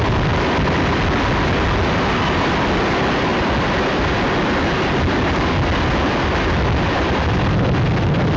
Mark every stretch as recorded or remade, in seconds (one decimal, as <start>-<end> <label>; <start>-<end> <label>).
0.0-8.4 recorded